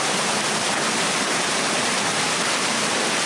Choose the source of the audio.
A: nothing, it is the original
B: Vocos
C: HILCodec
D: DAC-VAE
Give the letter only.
A